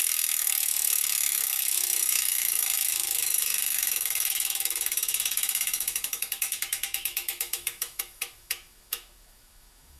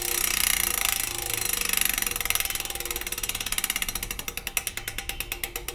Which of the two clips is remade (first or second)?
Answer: first